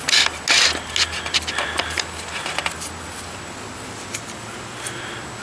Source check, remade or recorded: recorded